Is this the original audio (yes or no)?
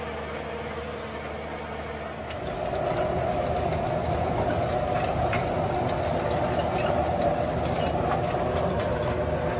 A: yes